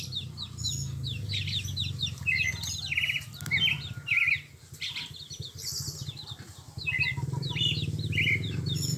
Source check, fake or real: real